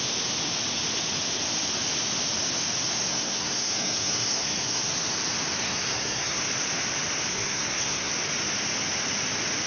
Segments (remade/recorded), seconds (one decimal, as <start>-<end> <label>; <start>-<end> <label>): 0.0-3.1 recorded; 3.1-4.8 remade; 4.8-5.6 recorded; 5.6-6.4 remade; 6.4-7.3 recorded; 7.3-8.1 remade; 8.1-9.7 recorded